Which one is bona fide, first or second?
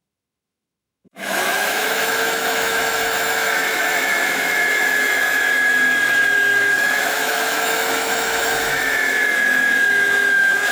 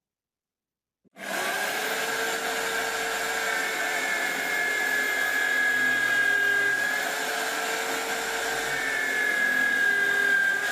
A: second